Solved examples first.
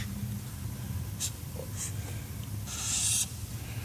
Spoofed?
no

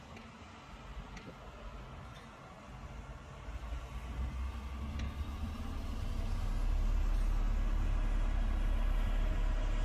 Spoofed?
no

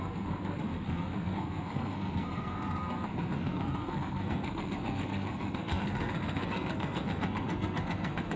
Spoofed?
yes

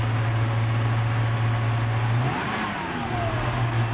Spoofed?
no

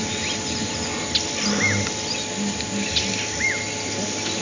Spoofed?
no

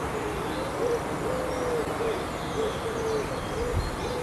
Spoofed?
no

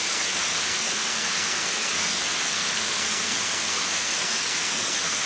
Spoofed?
yes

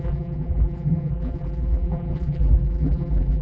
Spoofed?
yes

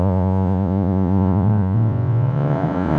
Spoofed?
yes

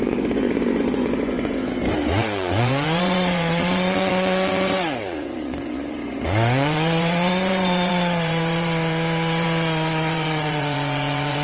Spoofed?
yes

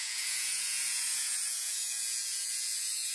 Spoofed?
yes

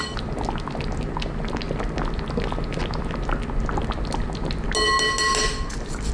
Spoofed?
no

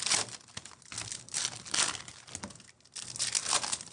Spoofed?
no